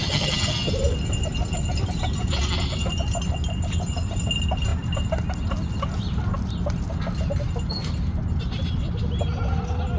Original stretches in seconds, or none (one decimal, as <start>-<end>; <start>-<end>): 0.7-10.0

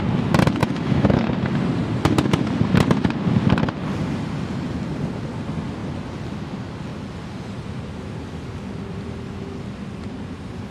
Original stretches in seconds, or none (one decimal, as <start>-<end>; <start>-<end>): 0.0-0.6; 1.3-10.7

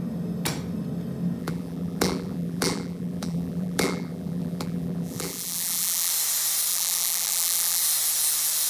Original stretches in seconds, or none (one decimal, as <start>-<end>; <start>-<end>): 0.0-1.4; 6.1-6.7; 7.8-8.7

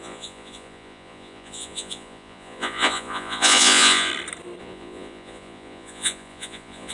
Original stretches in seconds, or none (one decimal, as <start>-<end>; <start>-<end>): 4.1-4.6

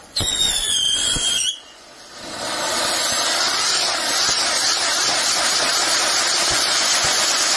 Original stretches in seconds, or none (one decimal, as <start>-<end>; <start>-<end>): 1.9-6.5

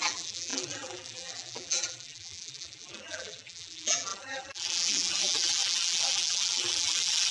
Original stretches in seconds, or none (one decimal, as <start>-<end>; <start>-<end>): none